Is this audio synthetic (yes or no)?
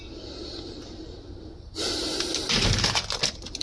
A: no